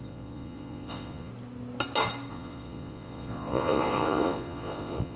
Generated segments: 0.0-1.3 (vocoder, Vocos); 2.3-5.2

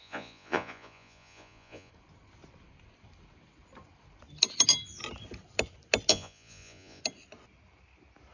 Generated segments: 0.0-1.9 (vocoder, Vocos); 6.1-7.0

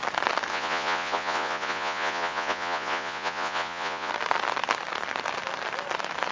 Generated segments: 0.5-4.1 (vocoder, Vocos)